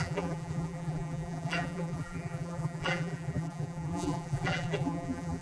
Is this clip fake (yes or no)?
yes